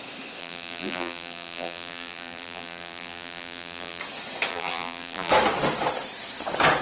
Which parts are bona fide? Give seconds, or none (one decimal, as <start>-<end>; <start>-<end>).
0.0-0.4; 4.0-4.5; 5.3-6.8